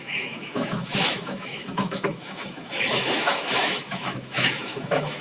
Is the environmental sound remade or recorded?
remade